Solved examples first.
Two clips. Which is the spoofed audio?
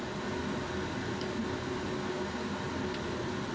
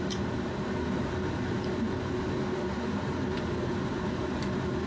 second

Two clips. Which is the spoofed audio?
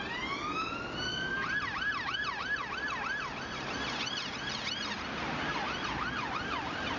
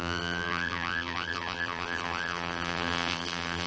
second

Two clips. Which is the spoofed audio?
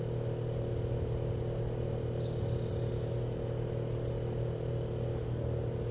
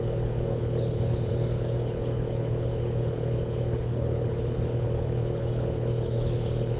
second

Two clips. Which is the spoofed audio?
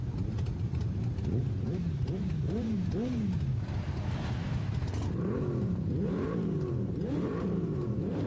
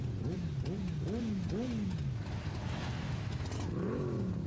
first